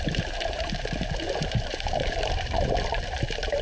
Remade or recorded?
remade